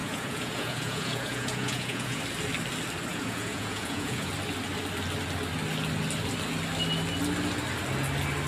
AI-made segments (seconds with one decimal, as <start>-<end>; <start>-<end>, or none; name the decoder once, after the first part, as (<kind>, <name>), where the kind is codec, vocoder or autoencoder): 0.0-2.2 (vocoder, Vocos); 3.1-4.3